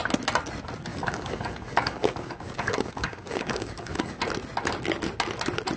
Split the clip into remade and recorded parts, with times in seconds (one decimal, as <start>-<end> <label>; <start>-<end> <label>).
0.0-0.9 recorded; 0.9-4.2 remade; 4.2-5.8 recorded